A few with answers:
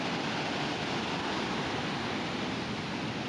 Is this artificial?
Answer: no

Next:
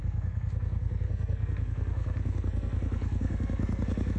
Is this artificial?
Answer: yes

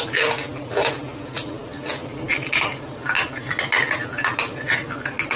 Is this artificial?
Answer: no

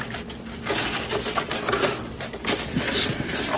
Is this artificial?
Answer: no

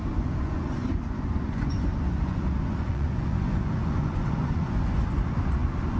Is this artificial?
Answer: yes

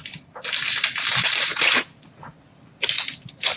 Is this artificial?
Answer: no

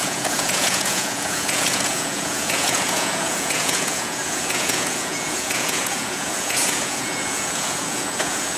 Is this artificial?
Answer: yes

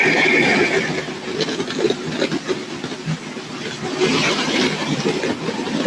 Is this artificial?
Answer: yes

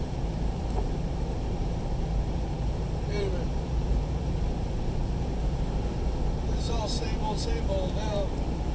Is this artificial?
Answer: yes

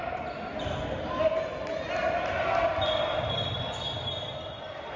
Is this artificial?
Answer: no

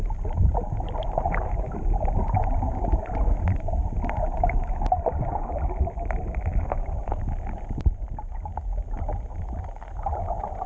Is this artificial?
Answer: no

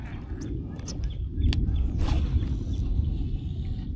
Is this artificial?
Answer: no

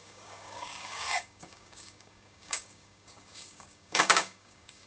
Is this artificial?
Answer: yes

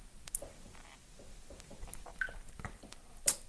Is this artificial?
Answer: no